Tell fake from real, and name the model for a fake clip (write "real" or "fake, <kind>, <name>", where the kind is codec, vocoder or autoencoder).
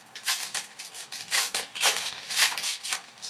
fake, codec, DAC